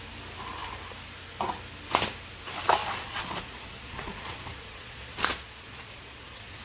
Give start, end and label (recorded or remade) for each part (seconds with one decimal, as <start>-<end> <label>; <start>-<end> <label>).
0.0-2.8 recorded; 2.8-6.6 remade